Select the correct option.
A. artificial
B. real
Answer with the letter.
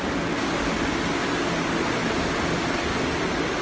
B